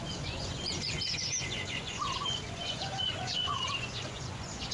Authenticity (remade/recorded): remade